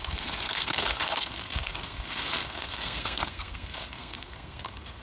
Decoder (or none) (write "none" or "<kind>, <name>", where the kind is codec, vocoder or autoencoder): codec, SNAC